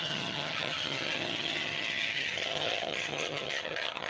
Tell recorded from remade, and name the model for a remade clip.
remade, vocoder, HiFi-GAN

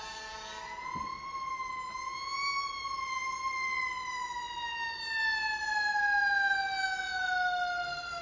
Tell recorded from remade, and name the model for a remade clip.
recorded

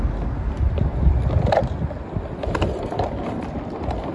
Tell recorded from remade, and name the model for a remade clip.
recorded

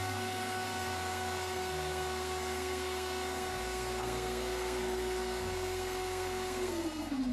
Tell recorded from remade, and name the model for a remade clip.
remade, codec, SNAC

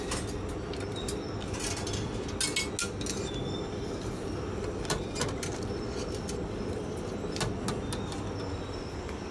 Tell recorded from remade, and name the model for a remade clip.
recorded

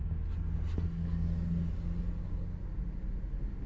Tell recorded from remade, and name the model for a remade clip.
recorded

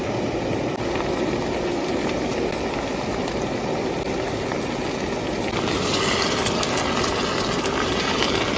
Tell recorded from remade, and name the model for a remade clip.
recorded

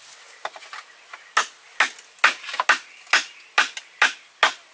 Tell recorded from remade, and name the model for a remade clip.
recorded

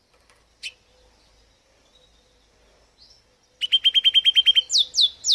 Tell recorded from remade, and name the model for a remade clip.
recorded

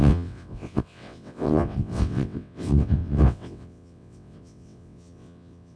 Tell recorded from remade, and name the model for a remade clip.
remade, vocoder, WaveNeXt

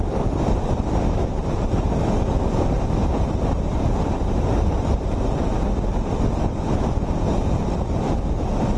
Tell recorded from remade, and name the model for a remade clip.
remade, vocoder, BigVGAN v2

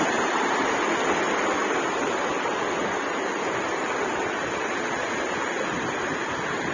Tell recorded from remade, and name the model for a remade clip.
recorded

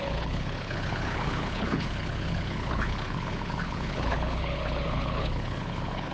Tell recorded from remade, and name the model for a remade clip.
remade, codec, HILCodec